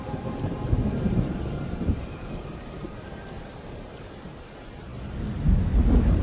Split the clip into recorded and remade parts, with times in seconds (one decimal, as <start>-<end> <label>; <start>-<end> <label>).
0.0-4.9 remade; 4.9-6.2 recorded